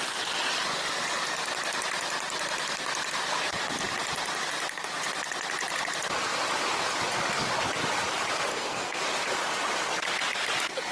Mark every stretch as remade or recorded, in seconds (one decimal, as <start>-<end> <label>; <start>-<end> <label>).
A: 0.0-8.5 recorded; 8.5-9.0 remade; 9.0-10.9 recorded